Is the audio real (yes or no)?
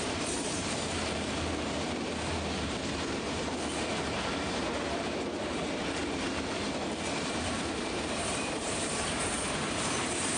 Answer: no